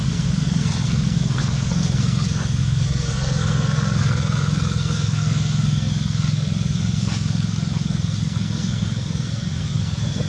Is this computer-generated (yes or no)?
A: yes